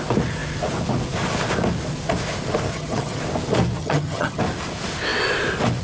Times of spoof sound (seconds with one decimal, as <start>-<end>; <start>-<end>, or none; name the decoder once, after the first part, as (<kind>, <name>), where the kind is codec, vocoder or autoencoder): 2.7-3.2 (vocoder, HiFi-GAN); 3.8-4.4